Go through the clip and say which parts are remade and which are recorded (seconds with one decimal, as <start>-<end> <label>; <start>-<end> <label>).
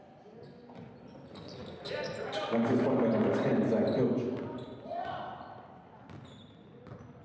0.0-7.2 recorded